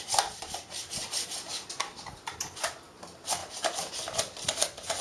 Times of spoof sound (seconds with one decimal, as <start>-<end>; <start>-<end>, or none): none